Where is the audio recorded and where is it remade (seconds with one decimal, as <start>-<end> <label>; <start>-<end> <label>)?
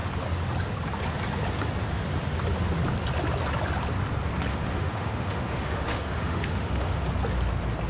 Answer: 0.0-4.5 recorded; 4.5-7.1 remade; 7.1-7.9 recorded